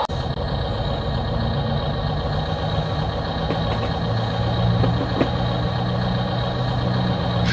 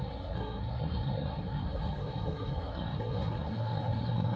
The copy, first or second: second